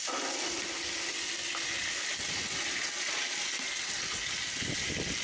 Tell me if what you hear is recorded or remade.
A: recorded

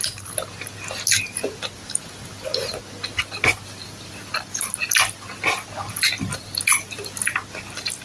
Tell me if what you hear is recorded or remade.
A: recorded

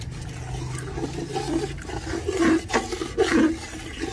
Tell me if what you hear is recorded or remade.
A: recorded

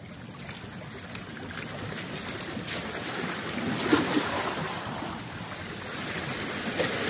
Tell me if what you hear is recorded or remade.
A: recorded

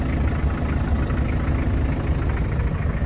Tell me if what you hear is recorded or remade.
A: recorded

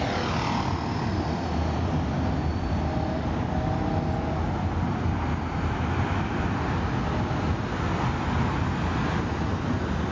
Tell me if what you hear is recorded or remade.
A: recorded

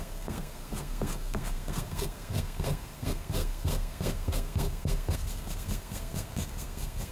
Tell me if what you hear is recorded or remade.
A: remade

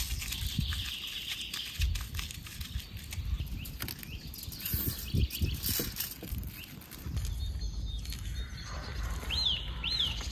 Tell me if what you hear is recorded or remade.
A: recorded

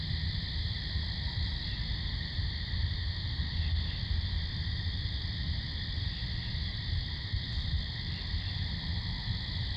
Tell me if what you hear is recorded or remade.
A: recorded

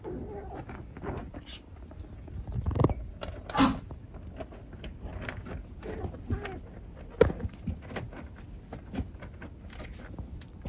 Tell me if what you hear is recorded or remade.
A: recorded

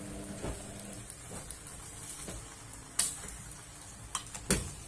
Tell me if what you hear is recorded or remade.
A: recorded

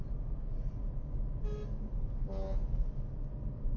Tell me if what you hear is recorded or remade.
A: recorded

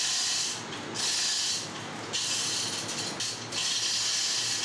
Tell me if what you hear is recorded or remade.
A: recorded